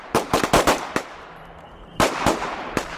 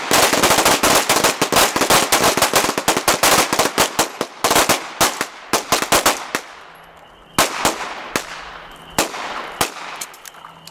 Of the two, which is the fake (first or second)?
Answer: first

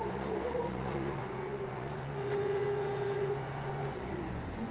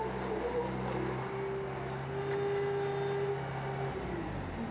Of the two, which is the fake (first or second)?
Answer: first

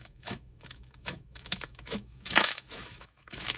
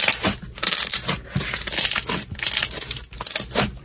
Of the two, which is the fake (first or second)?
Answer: first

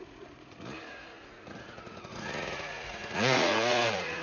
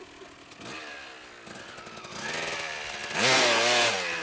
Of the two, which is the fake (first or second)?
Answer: first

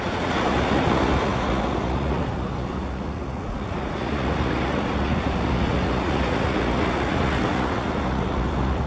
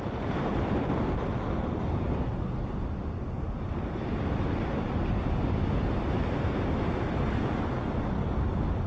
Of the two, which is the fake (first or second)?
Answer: first